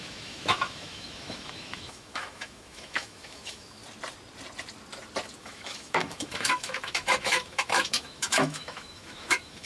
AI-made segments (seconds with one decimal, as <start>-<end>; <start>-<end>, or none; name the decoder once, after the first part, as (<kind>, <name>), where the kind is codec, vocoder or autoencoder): 0.0-3.8 (autoencoder, DAC-VAE); 5.4-9.7